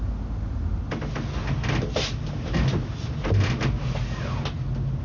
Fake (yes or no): no